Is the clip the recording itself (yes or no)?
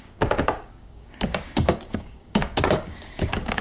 no